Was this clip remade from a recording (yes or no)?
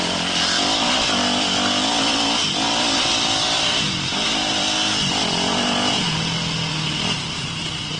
no